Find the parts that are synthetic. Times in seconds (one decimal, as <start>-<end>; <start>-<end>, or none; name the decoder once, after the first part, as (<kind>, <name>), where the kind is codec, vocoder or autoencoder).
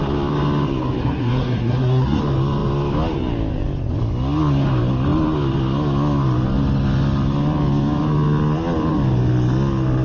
1.0-2.2 (codec, SNAC)